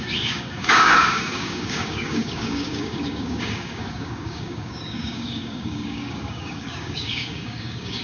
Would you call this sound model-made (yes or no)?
yes